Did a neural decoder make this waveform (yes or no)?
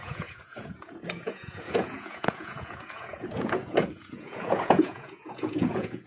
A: yes